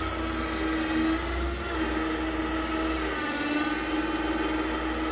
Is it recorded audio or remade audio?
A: recorded